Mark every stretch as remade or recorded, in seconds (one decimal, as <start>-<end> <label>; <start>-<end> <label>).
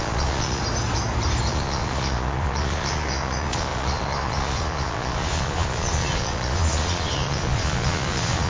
0.0-0.6 remade; 0.6-1.5 recorded; 1.5-8.5 remade